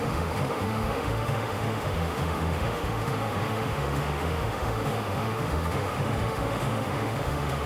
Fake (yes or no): yes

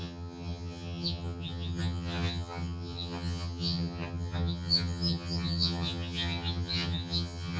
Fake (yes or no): yes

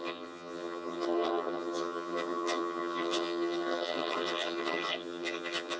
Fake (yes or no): yes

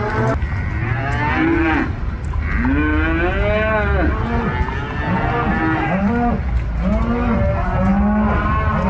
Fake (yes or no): no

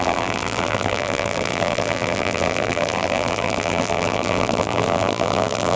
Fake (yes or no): yes